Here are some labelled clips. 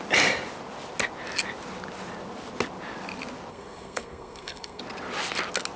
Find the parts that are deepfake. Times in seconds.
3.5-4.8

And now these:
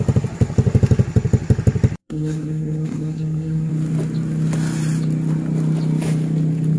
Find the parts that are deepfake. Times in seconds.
2.0-3.7

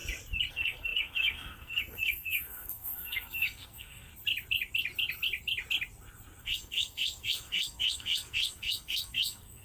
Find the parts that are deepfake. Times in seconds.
0.5-4.1; 6.4-9.6